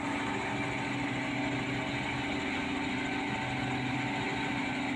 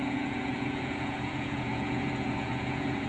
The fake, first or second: second